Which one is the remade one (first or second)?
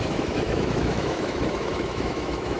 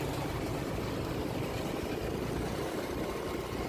first